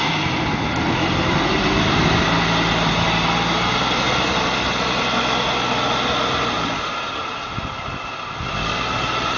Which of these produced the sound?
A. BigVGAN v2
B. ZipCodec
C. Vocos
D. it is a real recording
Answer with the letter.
D